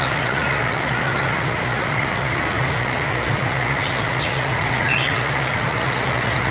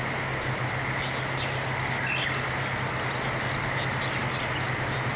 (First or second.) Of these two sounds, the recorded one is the second